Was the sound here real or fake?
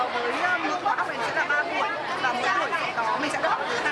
real